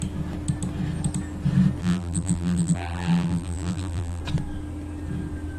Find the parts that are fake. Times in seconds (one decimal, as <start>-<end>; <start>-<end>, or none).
1.8-4.2